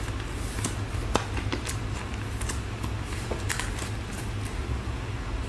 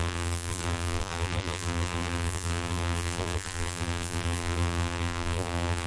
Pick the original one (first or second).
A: first